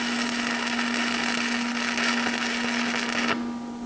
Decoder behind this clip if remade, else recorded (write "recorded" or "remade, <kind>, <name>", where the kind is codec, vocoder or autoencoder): recorded